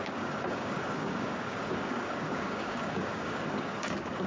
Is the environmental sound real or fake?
fake